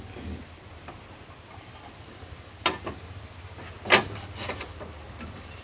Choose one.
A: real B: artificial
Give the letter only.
A